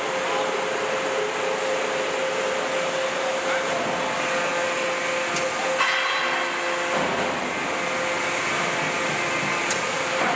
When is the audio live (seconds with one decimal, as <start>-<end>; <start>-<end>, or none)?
0.0-10.4